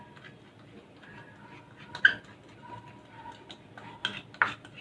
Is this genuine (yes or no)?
yes